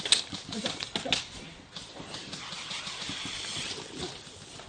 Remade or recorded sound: recorded